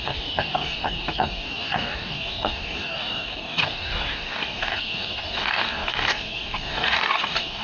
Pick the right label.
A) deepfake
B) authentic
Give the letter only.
A